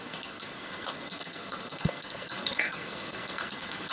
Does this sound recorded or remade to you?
remade